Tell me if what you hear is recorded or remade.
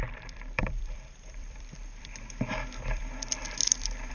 remade